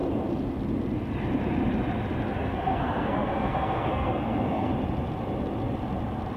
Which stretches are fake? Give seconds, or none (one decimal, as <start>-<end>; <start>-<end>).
2.4-4.7